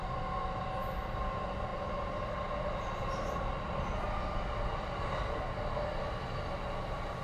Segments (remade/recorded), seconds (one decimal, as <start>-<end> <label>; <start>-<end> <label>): 0.0-7.2 recorded

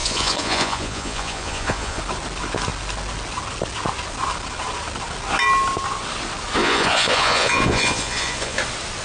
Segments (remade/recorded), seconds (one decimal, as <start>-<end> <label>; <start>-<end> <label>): 0.0-2.0 remade; 2.0-6.6 recorded; 6.6-8.6 remade; 8.6-9.0 recorded

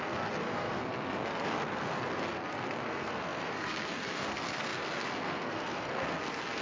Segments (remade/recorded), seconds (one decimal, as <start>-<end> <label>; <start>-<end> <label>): 0.0-6.6 remade

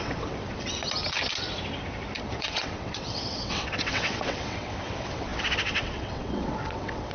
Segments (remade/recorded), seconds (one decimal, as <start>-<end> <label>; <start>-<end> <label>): 0.0-0.8 remade; 0.8-2.2 recorded; 2.2-7.1 remade